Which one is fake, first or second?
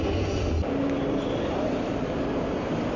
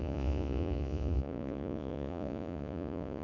second